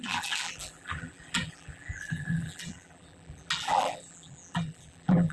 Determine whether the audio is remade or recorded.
remade